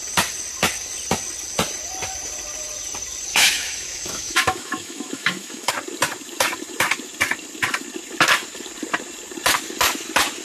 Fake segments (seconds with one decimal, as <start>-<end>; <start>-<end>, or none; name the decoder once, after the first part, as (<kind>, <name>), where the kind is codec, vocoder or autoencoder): 3.3-5.7 (autoencoder, DAC-VAE)